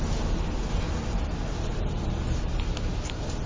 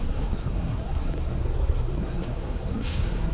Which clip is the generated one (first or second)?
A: second